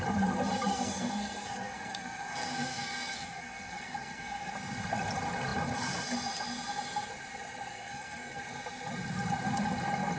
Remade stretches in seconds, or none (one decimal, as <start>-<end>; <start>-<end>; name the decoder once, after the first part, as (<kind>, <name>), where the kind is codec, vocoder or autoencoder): 0.7-4.5 (codec, SNAC); 7.7-8.4